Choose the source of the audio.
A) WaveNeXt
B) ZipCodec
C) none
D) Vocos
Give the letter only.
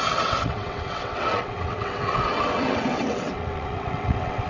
A